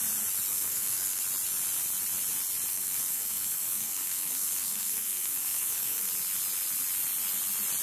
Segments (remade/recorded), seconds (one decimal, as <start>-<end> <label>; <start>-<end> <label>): 0.0-0.5 recorded; 0.5-1.2 remade; 1.2-2.7 recorded; 2.7-6.1 remade; 6.1-7.8 recorded